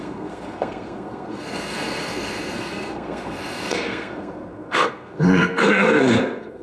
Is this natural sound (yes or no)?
no